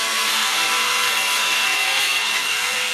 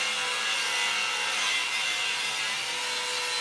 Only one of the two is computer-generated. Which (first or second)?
first